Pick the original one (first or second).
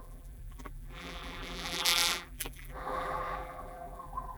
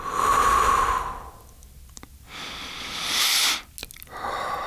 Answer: second